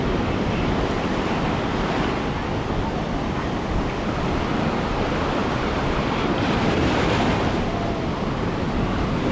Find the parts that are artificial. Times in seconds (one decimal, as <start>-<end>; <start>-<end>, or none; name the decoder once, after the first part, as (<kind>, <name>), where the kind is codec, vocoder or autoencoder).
5.4-7.9 (vocoder, BigVGAN v2)